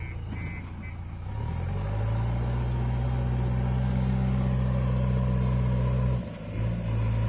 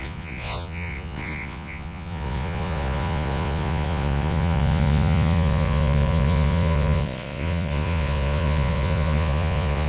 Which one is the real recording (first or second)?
first